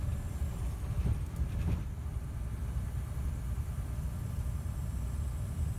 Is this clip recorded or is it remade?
recorded